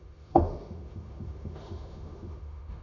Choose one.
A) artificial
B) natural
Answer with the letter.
A